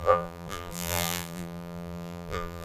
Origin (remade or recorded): remade